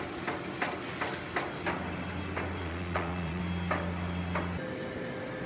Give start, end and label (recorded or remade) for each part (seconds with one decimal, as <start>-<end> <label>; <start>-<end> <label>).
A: 0.0-2.6 recorded; 2.6-3.4 remade; 3.4-5.5 recorded